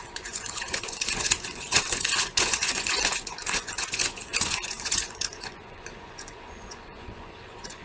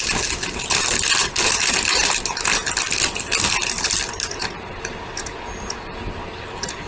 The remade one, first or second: first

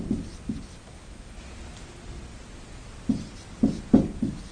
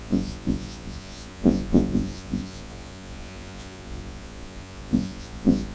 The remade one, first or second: second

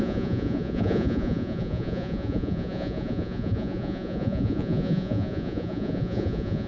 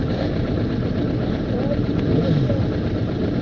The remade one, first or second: first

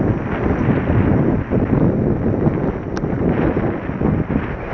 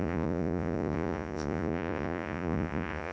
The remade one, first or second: second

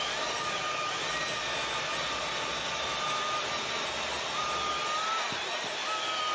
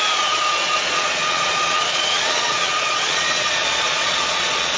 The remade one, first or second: second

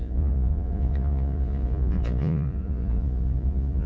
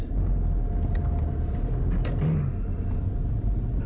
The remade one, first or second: first